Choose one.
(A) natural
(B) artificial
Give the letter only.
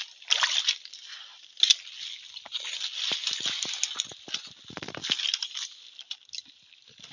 A